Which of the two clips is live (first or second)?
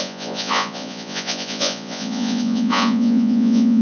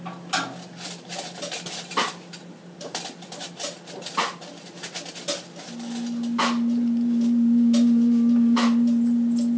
second